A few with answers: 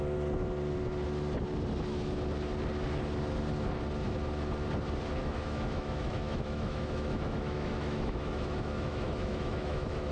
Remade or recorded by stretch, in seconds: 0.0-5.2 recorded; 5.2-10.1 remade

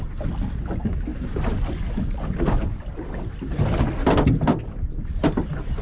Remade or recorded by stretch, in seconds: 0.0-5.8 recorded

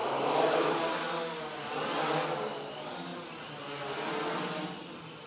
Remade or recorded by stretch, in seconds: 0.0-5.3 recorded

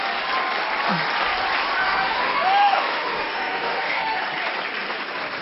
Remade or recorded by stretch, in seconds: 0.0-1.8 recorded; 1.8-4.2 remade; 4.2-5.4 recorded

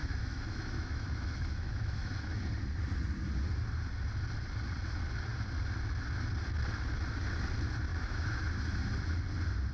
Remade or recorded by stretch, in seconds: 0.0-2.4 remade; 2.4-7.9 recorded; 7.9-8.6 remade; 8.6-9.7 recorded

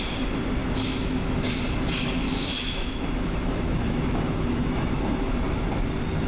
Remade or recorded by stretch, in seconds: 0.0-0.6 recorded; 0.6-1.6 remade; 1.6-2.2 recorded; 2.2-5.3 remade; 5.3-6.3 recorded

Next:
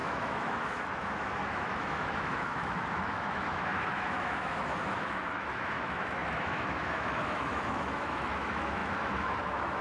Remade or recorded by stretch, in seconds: 0.0-9.8 remade

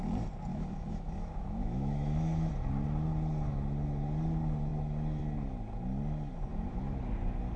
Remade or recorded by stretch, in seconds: 0.0-0.5 recorded; 0.5-2.5 remade; 2.5-6.5 recorded; 6.5-7.0 remade; 7.0-7.6 recorded